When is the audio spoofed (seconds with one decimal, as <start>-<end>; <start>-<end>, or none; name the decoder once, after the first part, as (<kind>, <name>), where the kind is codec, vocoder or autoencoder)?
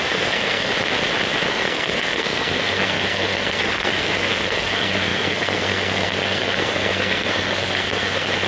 0.0-0.7 (codec, SNAC); 1.5-8.5